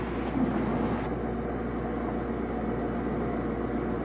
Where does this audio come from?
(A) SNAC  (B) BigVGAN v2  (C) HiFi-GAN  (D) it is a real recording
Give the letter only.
D